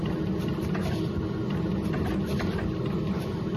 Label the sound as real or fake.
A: real